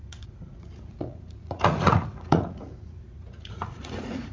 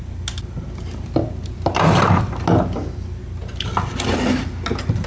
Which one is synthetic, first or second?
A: first